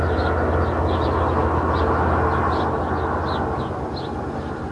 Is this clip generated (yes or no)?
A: no